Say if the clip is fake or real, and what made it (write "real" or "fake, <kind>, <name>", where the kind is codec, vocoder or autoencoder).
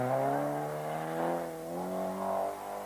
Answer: real